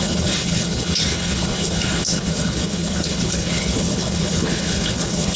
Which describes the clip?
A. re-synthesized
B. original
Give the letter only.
A